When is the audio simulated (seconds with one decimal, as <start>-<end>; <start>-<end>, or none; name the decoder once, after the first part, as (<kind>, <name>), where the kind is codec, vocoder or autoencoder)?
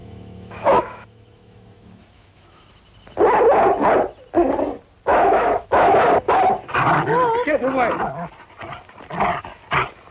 0.0-2.7 (autoencoder, DAC-VAE); 5.1-5.9